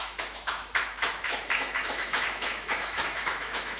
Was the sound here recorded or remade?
remade